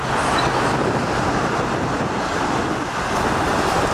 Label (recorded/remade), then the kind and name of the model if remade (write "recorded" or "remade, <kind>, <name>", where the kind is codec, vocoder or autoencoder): remade, vocoder, BigVGAN v2